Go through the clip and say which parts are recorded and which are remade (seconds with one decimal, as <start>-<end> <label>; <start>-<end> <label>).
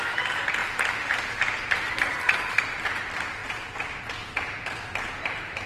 0.0-5.7 recorded